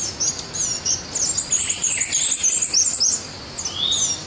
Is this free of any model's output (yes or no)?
yes